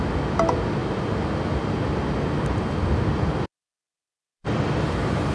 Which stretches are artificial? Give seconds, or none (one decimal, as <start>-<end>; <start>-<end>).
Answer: none